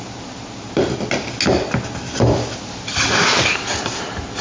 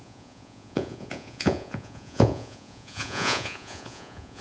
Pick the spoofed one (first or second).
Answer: second